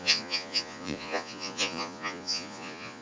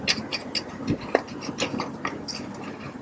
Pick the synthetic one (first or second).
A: first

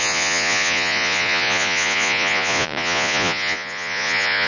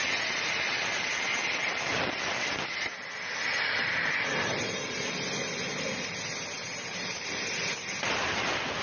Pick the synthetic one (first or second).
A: first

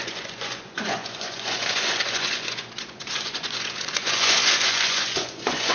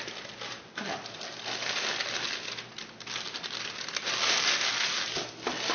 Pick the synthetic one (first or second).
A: first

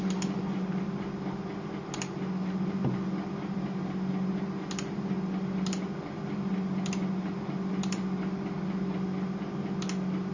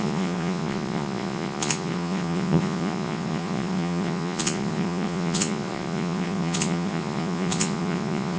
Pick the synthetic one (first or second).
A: second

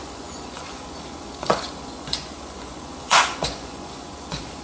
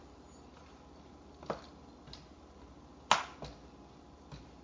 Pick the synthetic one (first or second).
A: first